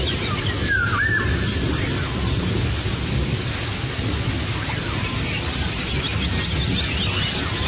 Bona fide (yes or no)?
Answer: yes